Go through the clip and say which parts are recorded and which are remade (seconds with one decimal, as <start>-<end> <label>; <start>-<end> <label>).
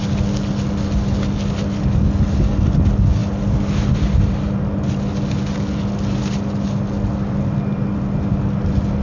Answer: 0.0-9.0 recorded